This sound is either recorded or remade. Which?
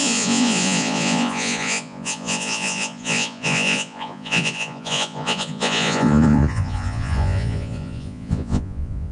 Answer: remade